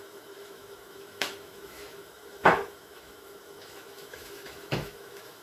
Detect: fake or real fake